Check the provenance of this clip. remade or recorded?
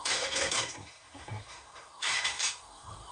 remade